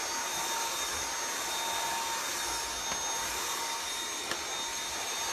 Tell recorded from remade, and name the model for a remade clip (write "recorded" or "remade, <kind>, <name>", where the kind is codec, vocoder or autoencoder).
recorded